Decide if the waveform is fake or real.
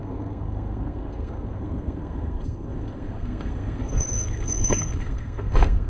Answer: fake